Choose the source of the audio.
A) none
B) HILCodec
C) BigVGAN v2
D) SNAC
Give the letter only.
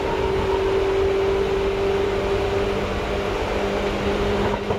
A